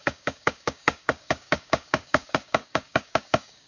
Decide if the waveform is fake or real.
fake